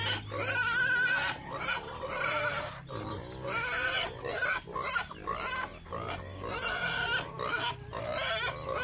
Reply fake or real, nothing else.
real